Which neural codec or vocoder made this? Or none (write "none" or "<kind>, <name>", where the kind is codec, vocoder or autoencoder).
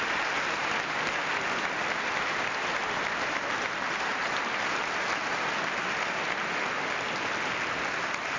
vocoder, BigVGAN v2